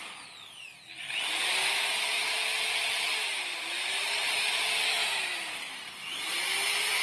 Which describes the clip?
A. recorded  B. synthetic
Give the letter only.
A